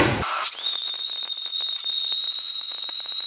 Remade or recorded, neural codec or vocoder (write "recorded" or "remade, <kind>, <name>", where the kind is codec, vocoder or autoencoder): remade, vocoder, Vocos